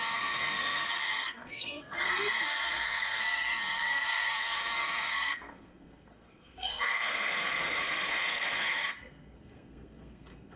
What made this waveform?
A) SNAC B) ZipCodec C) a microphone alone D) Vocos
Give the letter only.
A